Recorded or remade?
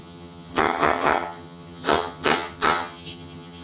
remade